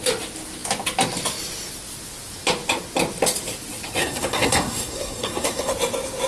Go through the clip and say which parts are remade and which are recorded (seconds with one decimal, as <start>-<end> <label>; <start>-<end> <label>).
0.0-4.0 recorded; 4.0-5.7 remade; 5.7-6.3 recorded